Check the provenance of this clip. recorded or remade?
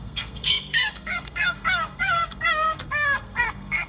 remade